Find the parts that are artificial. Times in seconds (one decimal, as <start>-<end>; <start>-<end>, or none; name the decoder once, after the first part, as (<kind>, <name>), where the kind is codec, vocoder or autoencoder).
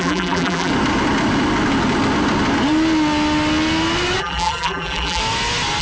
0.0-0.7 (vocoder, BigVGAN v2); 4.2-5.2